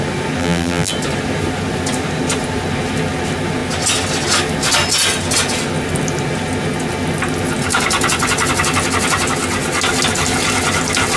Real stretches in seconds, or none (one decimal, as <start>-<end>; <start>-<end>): 0.0-0.4; 0.9-11.2